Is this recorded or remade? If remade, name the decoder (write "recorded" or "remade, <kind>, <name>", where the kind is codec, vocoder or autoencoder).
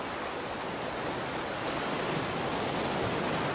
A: recorded